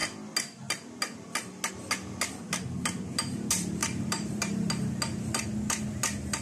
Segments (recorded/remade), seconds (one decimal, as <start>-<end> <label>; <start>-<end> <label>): 0.0-3.8 recorded; 3.8-4.7 remade; 4.7-6.4 recorded